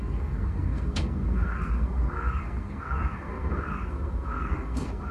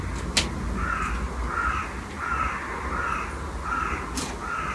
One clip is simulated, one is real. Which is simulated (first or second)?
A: first